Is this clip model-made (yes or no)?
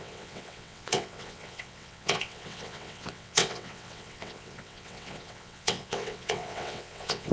yes